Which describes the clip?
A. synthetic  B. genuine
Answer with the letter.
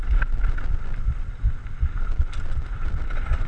B